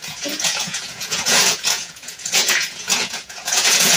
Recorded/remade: remade